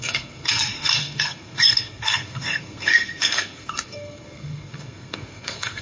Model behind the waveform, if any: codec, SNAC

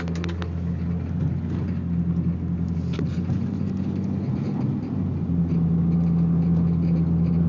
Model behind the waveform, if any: none